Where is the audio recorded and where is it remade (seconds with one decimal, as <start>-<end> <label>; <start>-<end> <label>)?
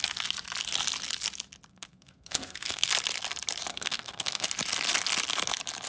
0.0-1.7 recorded; 1.7-2.9 remade; 2.9-3.7 recorded; 3.7-4.5 remade; 4.5-5.9 recorded